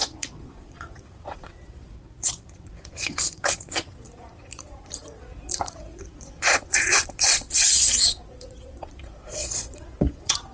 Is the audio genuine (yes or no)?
no